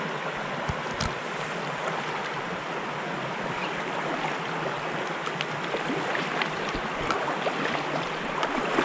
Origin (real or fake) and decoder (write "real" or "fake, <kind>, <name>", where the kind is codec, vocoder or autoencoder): real